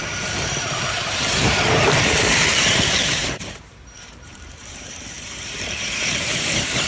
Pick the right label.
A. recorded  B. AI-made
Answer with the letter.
B